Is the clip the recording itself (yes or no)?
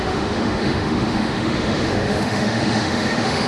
no